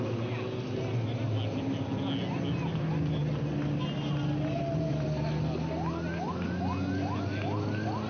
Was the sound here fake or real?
real